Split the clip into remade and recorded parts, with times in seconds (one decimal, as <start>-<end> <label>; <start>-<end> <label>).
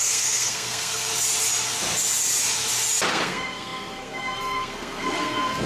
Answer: 0.0-1.1 remade; 1.1-3.1 recorded; 3.1-5.7 remade